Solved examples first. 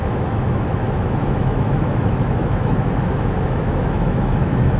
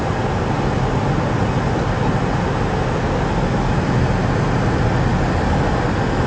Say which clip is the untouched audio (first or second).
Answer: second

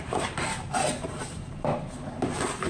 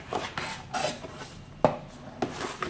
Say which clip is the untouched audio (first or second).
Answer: second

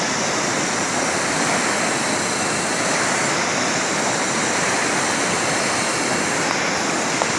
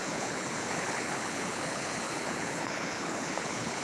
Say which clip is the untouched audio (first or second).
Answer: first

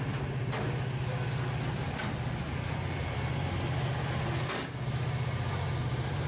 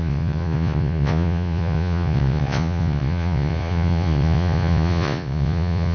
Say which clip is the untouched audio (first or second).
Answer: first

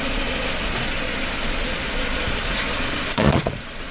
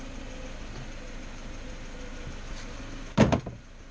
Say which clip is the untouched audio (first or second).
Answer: second